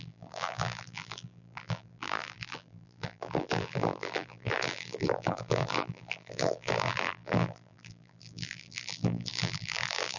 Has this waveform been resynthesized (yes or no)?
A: yes